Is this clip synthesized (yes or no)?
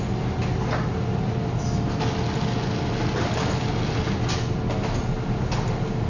no